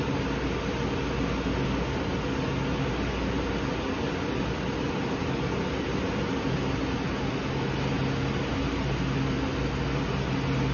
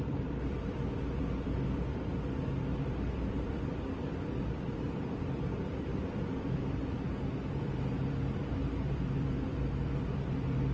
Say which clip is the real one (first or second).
first